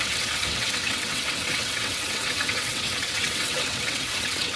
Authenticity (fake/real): fake